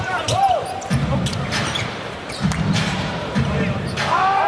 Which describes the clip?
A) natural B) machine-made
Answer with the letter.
B